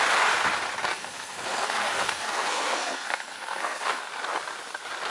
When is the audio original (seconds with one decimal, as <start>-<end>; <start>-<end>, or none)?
0.0-0.9; 4.0-5.1